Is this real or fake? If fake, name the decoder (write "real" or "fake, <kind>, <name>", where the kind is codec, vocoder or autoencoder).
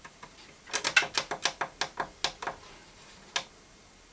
real